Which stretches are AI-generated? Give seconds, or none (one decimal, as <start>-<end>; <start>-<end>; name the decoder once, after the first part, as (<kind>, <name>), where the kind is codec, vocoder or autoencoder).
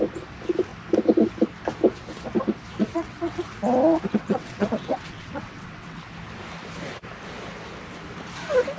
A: 2.8-3.4 (vocoder, WaveNeXt); 4.1-6.0